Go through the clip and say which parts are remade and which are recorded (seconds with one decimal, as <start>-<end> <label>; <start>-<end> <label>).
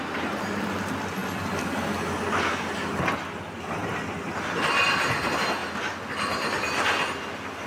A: 0.0-7.7 recorded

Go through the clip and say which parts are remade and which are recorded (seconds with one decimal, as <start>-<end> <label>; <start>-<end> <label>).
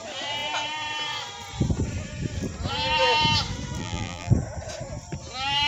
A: 0.0-3.8 recorded; 3.8-4.3 remade; 4.3-5.7 recorded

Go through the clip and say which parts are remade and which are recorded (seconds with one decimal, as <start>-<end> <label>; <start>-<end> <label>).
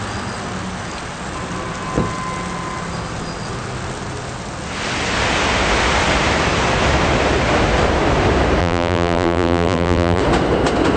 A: 0.0-8.6 recorded; 8.6-10.2 remade; 10.2-11.0 recorded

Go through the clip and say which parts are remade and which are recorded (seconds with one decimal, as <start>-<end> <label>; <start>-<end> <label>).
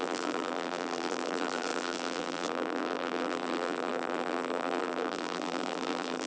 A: 0.0-6.3 remade